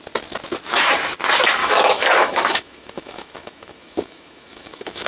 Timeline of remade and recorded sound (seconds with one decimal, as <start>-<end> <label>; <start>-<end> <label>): 0.0-1.6 recorded; 1.6-5.1 remade